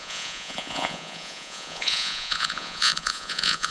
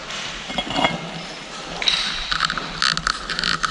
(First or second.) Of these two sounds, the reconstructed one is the first